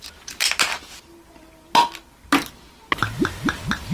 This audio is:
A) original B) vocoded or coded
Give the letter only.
A